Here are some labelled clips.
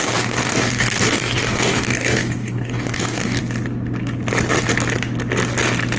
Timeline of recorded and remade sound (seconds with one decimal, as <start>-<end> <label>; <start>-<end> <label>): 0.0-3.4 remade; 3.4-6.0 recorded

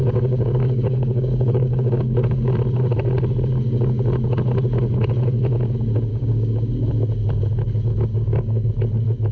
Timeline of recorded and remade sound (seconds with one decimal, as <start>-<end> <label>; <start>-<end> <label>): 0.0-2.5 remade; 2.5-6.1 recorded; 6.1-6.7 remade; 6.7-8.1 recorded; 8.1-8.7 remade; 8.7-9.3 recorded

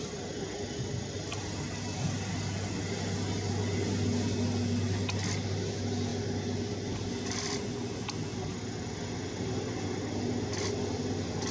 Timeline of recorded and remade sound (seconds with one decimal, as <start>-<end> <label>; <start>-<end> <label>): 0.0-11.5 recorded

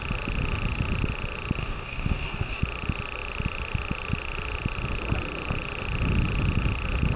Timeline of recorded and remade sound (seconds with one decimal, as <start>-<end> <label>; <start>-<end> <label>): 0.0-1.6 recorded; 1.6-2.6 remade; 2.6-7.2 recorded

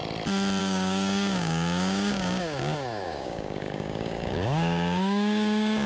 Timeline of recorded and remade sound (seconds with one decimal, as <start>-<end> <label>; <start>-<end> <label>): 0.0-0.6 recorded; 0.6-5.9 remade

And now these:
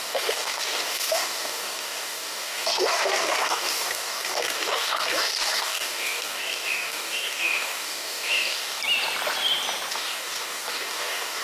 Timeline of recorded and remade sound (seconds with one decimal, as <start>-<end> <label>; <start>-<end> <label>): 0.0-8.8 remade; 8.8-9.9 recorded; 9.9-11.4 remade